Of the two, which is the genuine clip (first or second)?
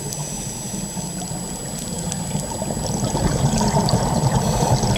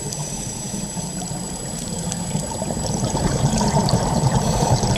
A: first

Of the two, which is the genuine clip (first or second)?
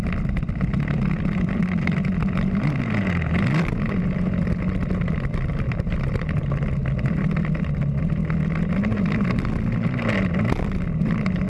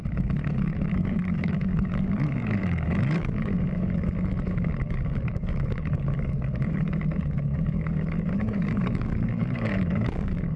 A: first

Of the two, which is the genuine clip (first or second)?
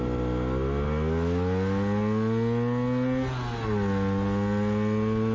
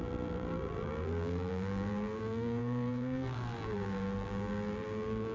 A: first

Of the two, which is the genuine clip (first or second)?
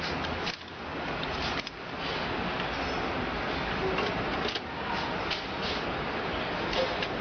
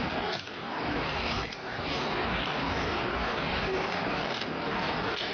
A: first